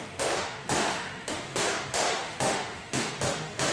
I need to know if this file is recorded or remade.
remade